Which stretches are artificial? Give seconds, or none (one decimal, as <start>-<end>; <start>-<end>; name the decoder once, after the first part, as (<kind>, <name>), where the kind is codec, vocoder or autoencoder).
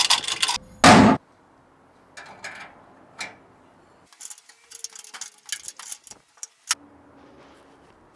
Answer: none